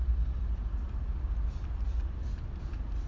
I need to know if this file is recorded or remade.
recorded